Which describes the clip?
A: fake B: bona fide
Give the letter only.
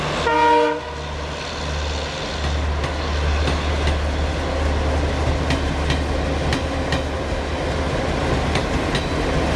B